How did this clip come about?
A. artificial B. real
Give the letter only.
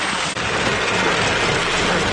B